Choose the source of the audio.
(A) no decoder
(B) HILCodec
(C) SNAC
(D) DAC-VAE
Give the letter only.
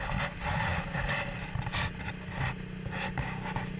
A